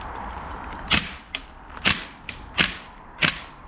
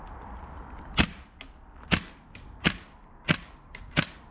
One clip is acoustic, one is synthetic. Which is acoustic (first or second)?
second